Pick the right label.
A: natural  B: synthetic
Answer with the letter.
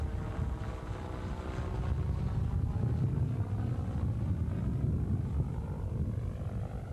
A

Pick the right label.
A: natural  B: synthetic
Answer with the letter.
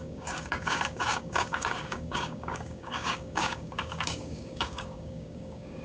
B